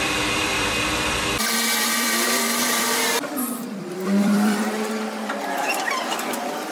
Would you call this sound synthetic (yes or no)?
yes